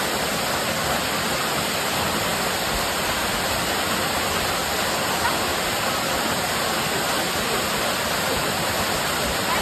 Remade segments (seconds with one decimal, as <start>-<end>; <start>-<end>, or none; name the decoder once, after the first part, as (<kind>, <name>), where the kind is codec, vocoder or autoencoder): none

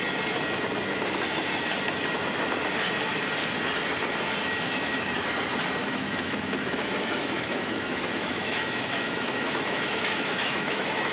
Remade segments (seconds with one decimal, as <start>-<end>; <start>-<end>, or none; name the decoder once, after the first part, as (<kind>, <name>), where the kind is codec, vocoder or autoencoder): 4.4-5.2 (autoencoder, DAC-VAE); 5.8-11.1

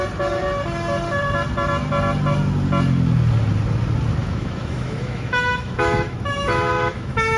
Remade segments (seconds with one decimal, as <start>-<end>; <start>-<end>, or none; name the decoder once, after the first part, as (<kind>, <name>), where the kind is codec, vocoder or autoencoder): 4.2-7.4 (autoencoder, DAC-VAE)

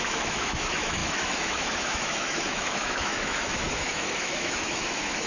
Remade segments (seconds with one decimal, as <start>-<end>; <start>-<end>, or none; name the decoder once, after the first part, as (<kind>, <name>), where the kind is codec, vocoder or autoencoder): 0.0-5.3 (autoencoder, DAC-VAE)

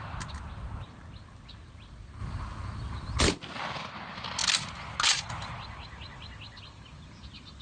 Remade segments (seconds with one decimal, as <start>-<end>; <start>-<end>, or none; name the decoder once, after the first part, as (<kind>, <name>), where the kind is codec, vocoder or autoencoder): none

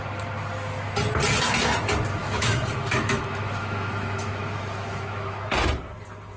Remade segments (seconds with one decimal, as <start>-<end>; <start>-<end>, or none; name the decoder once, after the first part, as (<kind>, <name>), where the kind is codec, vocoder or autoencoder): 2.2-5.5 (autoencoder, DAC-VAE)

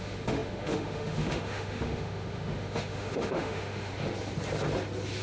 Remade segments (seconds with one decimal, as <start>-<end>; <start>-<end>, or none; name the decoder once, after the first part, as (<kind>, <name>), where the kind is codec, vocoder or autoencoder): 0.0-3.9 (autoencoder, DAC-VAE)